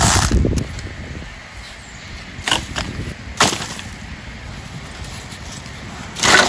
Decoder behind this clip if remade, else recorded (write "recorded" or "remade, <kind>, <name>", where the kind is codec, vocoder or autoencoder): recorded